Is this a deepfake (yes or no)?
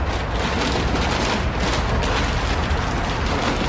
no